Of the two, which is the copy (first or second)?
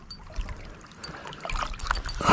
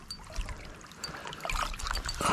second